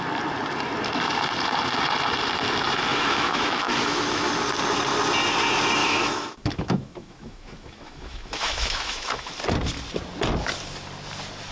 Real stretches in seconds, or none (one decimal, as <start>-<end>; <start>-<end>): 0.0-2.9; 4.3-5.8; 9.3-11.5